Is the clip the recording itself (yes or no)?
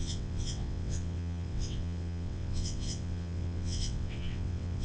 no